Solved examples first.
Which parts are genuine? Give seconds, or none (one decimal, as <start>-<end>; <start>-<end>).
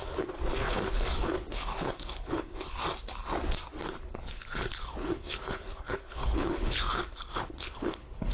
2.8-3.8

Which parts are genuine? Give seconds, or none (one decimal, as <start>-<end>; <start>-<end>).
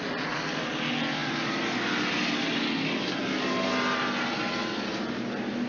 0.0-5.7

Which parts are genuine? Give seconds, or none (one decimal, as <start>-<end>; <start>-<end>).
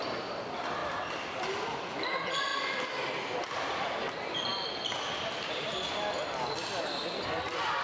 0.0-7.8